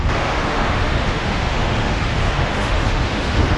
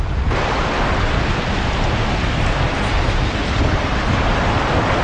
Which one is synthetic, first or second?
first